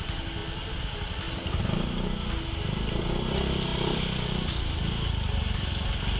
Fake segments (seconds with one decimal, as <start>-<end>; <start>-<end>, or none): none